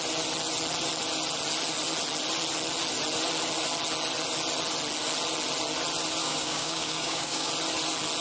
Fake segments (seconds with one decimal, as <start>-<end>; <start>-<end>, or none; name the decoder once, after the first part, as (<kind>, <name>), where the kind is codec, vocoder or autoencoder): 6.2-7.5 (codec, DAC)